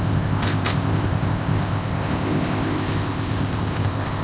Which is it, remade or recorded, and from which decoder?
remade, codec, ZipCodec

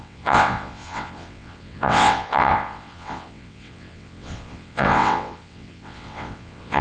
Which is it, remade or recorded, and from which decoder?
remade, vocoder, WaveNeXt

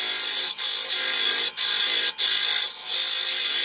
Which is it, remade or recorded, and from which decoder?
recorded